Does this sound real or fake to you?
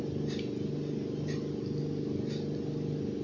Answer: real